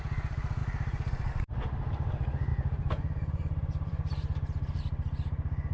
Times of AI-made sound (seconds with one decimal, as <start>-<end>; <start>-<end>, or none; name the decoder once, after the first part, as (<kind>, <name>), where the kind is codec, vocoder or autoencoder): 0.6-1.3 (vocoder, BigVGAN v2); 2.5-4.8